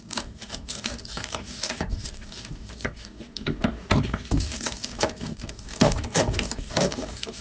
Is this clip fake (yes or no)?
yes